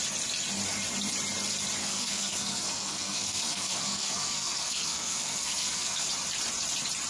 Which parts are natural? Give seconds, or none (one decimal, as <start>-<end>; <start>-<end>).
0.0-1.8; 6.1-7.1